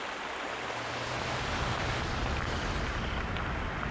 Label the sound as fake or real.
real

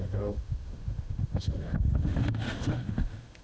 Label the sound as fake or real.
fake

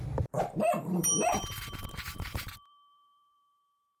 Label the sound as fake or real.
fake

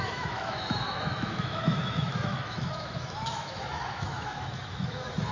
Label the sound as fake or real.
fake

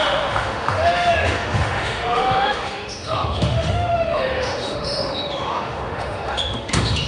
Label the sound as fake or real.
fake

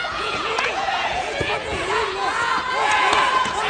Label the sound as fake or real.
fake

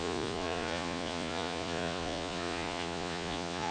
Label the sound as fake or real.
fake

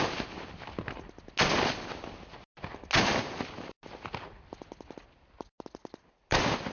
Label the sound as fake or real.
real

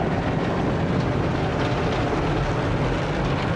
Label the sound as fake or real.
real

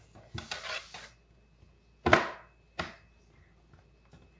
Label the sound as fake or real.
real